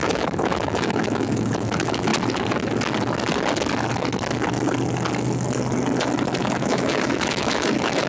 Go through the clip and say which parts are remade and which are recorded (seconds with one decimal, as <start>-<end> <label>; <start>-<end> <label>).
0.0-2.1 remade; 2.1-6.4 recorded; 6.4-8.1 remade